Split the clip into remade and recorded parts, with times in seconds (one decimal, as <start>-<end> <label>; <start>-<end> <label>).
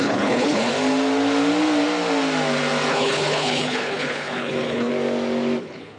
0.0-0.7 remade; 0.7-2.9 recorded; 2.9-4.9 remade; 4.9-5.6 recorded; 5.6-6.0 remade